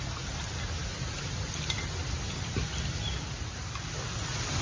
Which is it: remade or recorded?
recorded